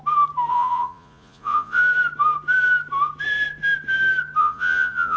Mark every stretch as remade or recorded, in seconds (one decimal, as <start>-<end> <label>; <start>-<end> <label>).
0.0-0.5 recorded; 0.5-1.8 remade; 1.8-4.4 recorded; 4.4-5.2 remade